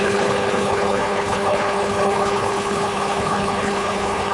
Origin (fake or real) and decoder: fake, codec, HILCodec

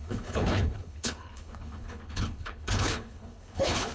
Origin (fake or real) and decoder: fake, codec, HILCodec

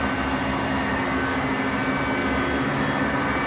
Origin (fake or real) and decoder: real